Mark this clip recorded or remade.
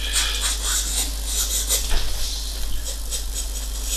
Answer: recorded